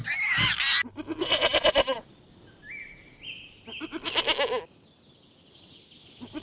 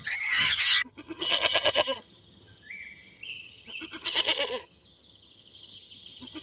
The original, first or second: first